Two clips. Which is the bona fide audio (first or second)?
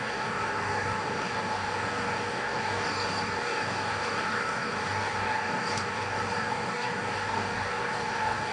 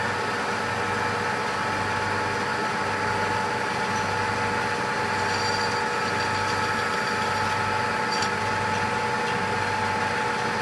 second